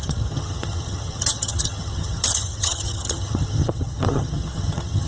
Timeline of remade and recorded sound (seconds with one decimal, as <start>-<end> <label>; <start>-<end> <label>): 0.0-5.1 remade